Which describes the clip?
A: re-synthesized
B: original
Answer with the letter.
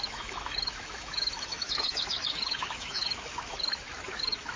A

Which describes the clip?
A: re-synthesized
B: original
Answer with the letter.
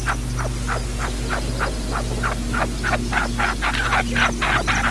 B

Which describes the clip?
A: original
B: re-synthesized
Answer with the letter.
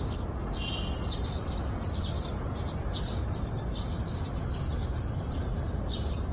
A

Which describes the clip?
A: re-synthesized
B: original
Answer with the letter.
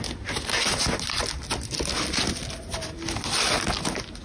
B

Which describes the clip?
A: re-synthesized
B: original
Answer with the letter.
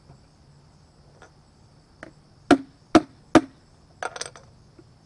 B